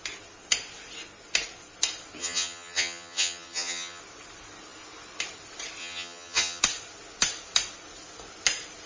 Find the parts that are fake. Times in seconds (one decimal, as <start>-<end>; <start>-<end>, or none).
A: 2.2-4.0; 5.8-6.6